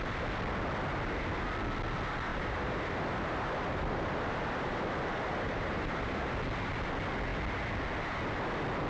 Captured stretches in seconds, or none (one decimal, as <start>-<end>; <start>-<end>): 0.0-2.3; 6.3-8.9